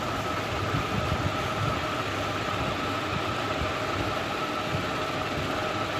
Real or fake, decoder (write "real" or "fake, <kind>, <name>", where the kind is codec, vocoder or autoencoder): real